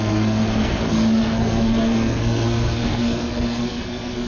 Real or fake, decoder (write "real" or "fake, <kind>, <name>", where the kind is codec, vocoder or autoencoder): fake, codec, SNAC